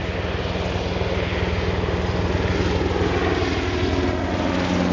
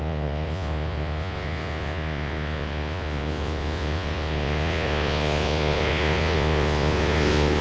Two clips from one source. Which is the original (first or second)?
first